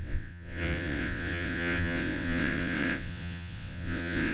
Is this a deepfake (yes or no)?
yes